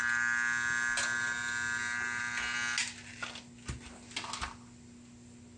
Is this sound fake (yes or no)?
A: no